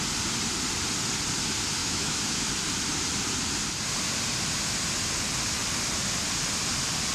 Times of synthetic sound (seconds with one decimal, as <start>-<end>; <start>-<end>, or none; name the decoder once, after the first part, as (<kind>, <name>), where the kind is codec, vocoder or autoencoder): 1.8-2.5 (autoencoder, DAC-VAE)